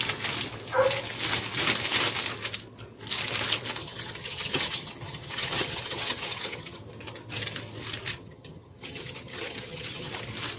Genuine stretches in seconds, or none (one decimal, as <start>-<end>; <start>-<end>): 0.0-3.8; 6.8-8.1; 10.1-10.6